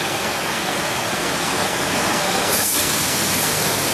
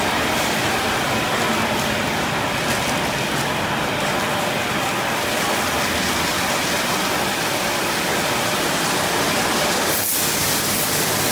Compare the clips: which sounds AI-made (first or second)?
first